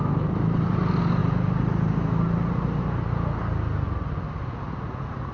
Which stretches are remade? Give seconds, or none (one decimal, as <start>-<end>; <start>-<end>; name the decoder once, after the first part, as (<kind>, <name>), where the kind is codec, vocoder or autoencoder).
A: none